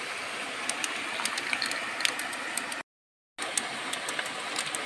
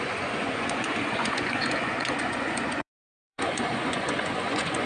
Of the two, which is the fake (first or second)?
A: second